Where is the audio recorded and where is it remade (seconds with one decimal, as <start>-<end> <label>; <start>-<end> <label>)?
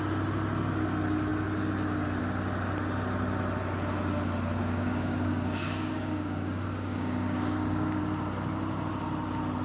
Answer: 0.0-4.6 recorded; 4.6-8.0 remade; 8.0-9.6 recorded